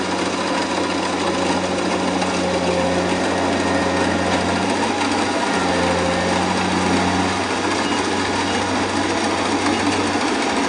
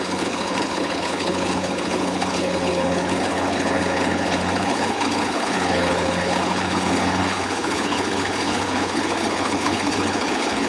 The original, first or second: first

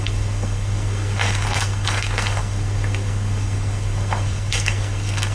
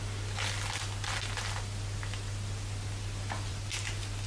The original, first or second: second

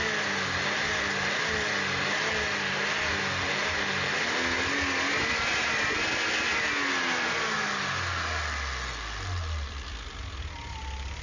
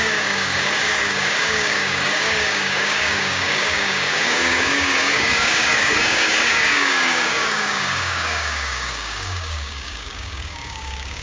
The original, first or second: first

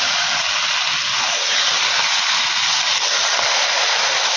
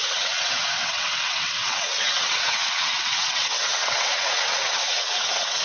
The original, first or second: first